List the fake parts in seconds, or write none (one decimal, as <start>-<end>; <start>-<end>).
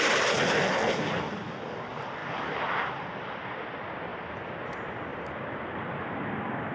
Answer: 4.1-6.1